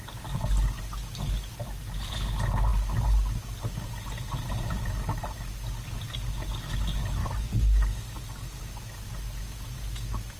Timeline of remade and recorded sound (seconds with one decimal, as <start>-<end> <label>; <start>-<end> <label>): 0.0-7.2 recorded; 7.2-8.6 remade; 8.6-10.4 recorded

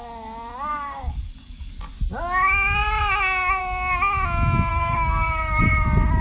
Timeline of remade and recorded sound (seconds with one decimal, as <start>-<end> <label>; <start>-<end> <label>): 0.0-0.7 recorded; 0.7-1.7 remade; 1.7-4.7 recorded; 4.7-5.6 remade; 5.6-6.2 recorded